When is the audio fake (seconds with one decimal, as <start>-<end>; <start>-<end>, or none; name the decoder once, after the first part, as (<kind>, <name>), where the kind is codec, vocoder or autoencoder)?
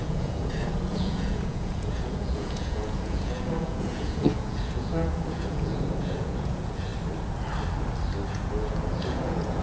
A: 0.0-6.9 (vocoder, Vocos); 8.3-9.6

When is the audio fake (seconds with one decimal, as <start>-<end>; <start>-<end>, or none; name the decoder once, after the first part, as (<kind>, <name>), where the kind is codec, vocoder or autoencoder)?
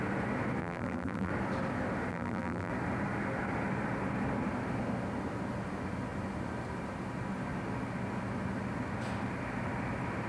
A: 0.6-1.3 (vocoder, BigVGAN v2); 2.1-2.7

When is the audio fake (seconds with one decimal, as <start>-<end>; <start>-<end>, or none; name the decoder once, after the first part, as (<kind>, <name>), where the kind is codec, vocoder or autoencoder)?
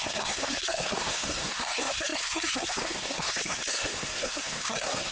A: 0.0-5.1 (codec, SNAC)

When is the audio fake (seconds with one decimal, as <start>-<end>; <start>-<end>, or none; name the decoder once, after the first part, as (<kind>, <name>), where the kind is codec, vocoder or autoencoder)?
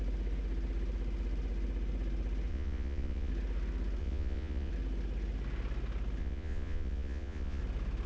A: 2.5-3.3 (vocoder, Vocos); 4.0-4.7; 6.2-7.6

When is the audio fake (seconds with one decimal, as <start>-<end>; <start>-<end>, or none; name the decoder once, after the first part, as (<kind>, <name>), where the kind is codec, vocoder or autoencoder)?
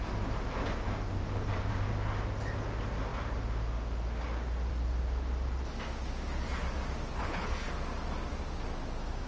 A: 7.1-7.7 (codec, HILCodec)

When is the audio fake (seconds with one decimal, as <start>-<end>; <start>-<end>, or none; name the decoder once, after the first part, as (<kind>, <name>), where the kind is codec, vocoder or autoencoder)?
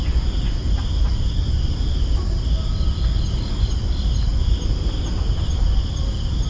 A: none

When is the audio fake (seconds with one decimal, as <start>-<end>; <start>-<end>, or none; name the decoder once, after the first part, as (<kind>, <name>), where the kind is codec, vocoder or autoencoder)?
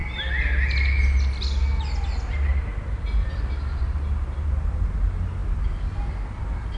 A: 3.2-5.4 (vocoder, BigVGAN v2); 6.1-6.8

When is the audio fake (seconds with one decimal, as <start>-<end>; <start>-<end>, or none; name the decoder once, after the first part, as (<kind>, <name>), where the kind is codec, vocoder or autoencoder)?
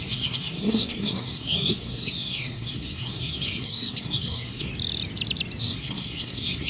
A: 0.0-4.7 (codec, SNAC); 5.6-6.7